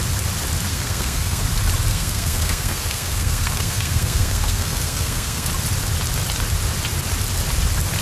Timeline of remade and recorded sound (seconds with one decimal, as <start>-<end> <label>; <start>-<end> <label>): 0.0-0.7 recorded; 0.7-1.4 remade; 1.4-1.9 recorded; 1.9-5.5 remade; 5.5-8.0 recorded